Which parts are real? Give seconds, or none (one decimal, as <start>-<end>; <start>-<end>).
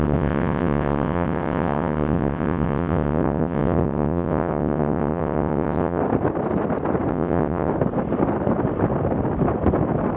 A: 6.0-7.1; 7.7-10.2